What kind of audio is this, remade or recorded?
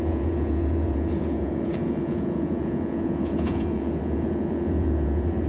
remade